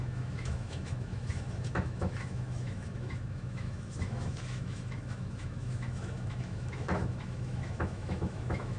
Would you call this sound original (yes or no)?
no